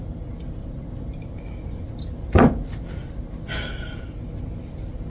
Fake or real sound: real